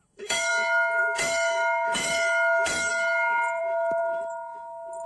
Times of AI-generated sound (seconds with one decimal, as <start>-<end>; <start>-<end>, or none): 0.0-0.5; 1.0-2.9; 3.6-4.0